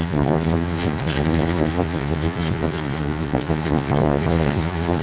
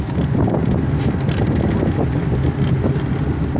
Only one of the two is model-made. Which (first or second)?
first